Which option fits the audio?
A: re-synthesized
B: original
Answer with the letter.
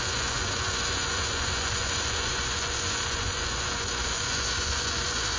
A